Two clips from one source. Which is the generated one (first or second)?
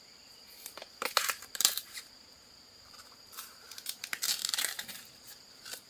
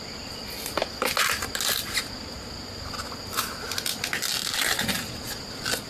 first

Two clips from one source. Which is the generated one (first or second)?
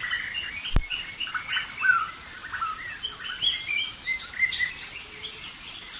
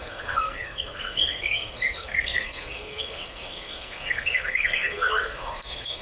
second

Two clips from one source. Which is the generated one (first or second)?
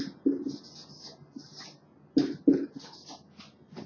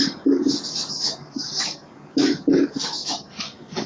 second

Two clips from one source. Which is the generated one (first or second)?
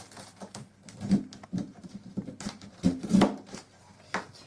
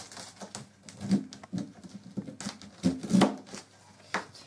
first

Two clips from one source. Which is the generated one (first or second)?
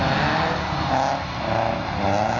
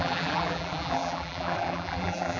second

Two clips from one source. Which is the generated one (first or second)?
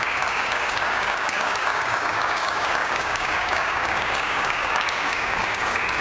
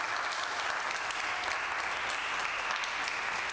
first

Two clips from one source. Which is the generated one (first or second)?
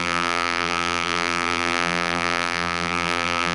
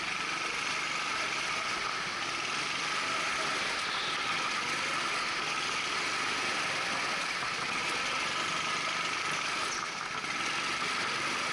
first